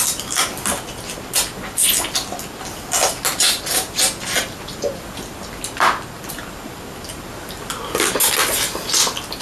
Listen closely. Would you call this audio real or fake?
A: real